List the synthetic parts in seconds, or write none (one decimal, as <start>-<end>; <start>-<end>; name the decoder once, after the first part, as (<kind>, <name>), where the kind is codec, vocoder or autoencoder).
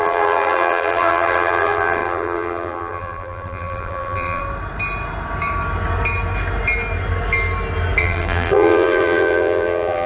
0.0-4.4 (vocoder, BigVGAN v2); 8.0-10.1